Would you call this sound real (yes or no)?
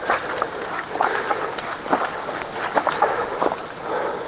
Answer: yes